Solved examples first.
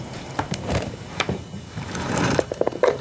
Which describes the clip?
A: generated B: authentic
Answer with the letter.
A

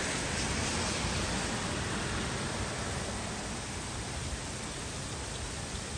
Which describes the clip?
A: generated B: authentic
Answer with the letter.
B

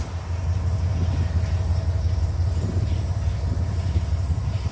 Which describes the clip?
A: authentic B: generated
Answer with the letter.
A